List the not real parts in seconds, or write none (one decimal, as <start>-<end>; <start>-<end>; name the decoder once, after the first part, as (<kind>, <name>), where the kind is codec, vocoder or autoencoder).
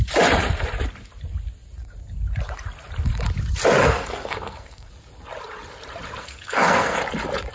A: 3.8-4.9 (codec, SNAC); 6.2-7.0